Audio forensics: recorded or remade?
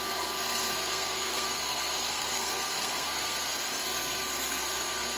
remade